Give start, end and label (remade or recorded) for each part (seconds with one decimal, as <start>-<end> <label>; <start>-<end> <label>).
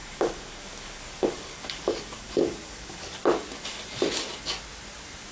0.0-3.2 remade; 3.2-5.3 recorded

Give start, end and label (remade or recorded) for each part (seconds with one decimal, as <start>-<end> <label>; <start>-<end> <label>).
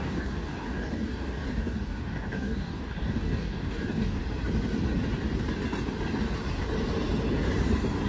0.0-4.2 remade; 4.2-8.1 recorded